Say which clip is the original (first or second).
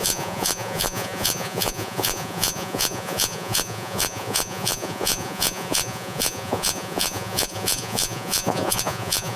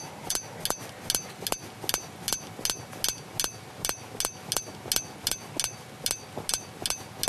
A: second